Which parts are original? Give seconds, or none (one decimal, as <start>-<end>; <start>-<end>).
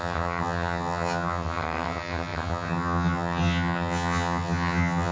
none